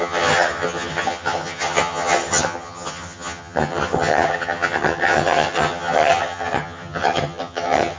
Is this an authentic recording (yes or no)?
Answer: no